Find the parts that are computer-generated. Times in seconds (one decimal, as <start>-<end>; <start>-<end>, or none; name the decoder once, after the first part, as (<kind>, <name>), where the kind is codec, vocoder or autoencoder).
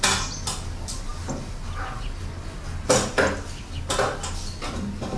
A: none